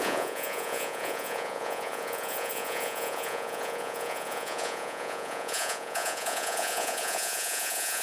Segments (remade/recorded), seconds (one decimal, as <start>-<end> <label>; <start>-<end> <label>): 0.0-8.0 remade

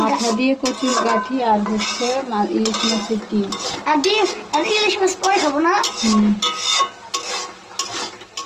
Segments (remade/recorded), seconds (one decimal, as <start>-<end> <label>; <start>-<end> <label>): 0.0-8.5 recorded

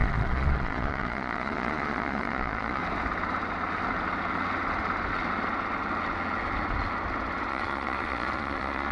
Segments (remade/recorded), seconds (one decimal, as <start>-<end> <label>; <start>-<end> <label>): 0.0-2.8 remade; 2.8-7.5 recorded; 7.5-8.9 remade

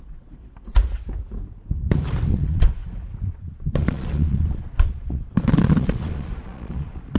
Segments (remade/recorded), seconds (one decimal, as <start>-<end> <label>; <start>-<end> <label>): 0.0-0.4 remade; 0.4-2.3 recorded; 2.3-2.8 remade; 2.8-3.3 recorded; 3.3-7.2 remade

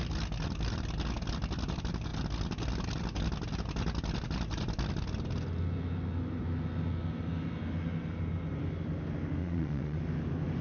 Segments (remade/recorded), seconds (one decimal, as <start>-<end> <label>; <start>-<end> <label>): 0.0-9.4 recorded; 9.4-10.0 remade; 10.0-10.6 recorded